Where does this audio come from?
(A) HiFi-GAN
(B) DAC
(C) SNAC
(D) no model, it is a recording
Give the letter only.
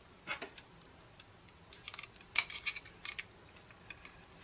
D